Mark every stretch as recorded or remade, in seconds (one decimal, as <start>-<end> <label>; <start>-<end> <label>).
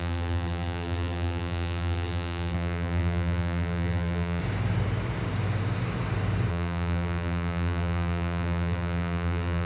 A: 0.0-4.4 remade; 4.4-6.5 recorded; 6.5-9.7 remade